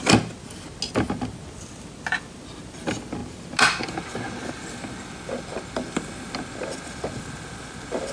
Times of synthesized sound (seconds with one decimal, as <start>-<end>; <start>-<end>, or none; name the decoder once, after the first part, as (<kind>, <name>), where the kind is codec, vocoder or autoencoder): none

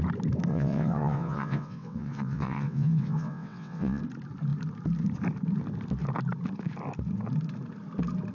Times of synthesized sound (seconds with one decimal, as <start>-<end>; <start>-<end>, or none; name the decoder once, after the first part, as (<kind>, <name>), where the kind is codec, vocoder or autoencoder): 0.5-4.0 (vocoder, WaveNeXt)

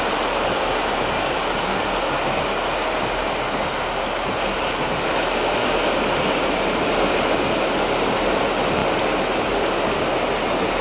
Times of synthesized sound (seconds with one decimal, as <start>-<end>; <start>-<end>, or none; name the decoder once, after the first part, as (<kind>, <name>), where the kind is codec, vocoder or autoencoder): none

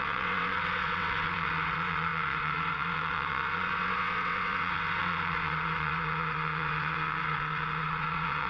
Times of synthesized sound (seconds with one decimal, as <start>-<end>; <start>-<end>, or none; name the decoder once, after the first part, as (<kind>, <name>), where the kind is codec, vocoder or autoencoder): 0.0-8.5 (vocoder, WaveNeXt)